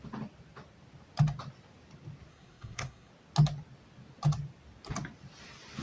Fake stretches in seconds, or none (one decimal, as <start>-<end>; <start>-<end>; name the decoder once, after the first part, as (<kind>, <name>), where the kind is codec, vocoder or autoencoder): 2.3-3.1 (codec, SNAC)